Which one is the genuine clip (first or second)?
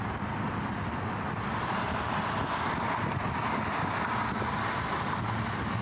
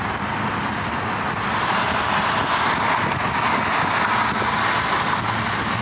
second